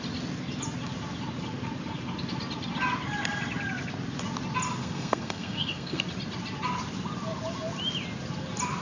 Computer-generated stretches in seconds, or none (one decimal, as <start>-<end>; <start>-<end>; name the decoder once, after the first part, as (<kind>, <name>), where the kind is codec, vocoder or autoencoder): 4.8-6.0 (codec, SNAC)